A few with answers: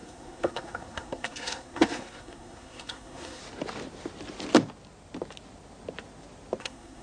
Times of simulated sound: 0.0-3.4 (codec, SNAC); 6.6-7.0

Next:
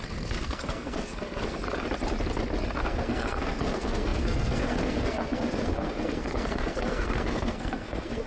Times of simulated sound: 0.0-1.6 (codec, SNAC); 2.8-8.3

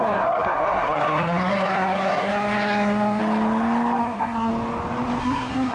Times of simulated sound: 0.0-3.2 (codec, SNAC); 4.0-4.5; 5.2-5.7

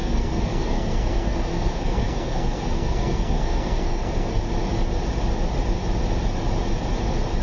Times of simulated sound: 0.0-4.4 (codec, SNAC)

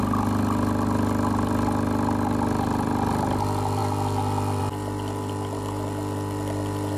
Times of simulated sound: none

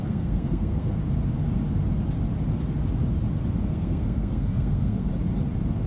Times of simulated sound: 0.0-1.0 (codec, SNAC); 3.6-5.1

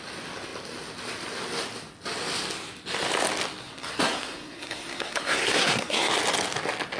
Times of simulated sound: 3.6-6.1 (codec, SNAC)